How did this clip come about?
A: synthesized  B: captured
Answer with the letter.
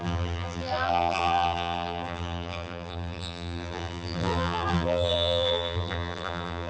A